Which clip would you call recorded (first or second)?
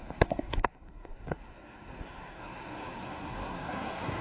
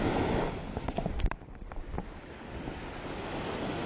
second